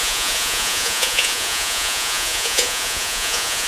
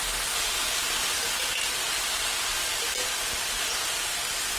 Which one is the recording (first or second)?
second